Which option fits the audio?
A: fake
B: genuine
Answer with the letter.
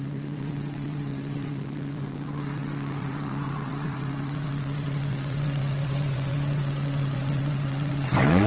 A